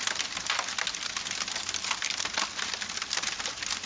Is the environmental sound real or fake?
real